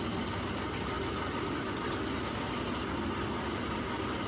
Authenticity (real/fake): real